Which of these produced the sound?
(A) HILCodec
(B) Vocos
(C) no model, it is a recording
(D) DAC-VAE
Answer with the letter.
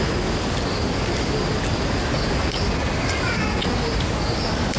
C